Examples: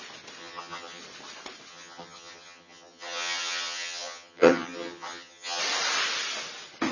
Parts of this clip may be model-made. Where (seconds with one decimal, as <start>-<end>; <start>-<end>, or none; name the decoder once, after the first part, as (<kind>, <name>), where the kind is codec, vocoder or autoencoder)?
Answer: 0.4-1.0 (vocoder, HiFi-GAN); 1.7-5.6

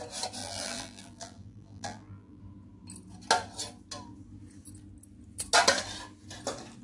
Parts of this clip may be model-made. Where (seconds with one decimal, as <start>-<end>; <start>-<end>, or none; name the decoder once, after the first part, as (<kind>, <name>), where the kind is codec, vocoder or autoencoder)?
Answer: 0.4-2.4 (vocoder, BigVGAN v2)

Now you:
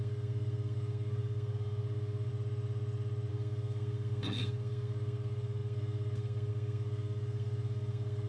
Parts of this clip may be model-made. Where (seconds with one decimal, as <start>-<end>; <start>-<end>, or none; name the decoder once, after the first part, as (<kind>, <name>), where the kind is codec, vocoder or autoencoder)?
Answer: 0.0-2.3 (codec, SNAC); 3.3-8.3